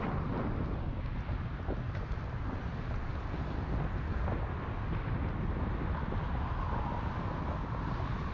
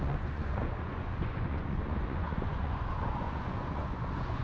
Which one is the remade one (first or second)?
second